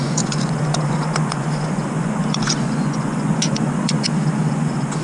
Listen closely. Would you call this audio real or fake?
fake